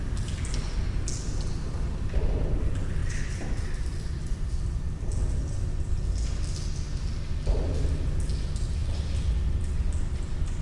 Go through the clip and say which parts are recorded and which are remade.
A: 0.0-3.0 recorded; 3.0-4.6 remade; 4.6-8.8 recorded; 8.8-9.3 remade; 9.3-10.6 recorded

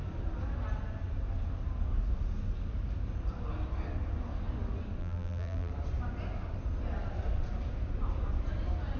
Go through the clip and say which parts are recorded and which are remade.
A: 0.0-5.0 recorded; 5.0-5.7 remade; 5.7-9.0 recorded